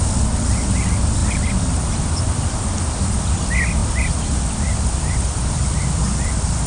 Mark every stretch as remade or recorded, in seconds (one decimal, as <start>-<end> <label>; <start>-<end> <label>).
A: 0.0-6.7 recorded